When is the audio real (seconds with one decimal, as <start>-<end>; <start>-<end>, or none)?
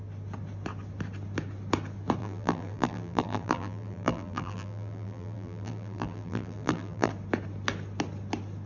0.0-2.2; 7.1-8.7